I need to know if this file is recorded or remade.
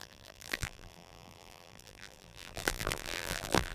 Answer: remade